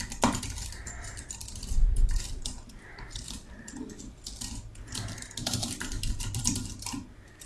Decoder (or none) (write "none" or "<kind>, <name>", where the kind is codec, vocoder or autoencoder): none